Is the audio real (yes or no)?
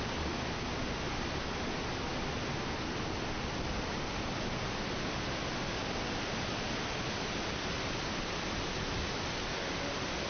yes